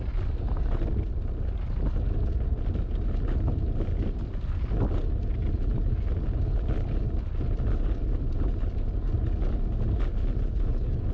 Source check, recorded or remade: recorded